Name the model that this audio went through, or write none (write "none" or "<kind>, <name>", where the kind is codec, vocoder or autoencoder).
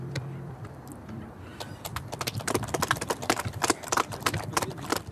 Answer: vocoder, BigVGAN v2